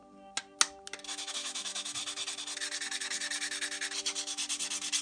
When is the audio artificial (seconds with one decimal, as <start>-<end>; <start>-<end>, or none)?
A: 1.3-2.0